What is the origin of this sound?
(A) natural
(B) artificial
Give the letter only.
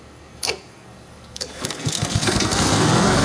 B